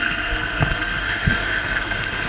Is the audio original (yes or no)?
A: no